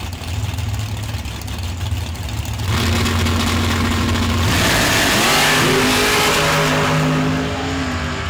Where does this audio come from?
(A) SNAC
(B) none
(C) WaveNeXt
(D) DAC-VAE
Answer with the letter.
B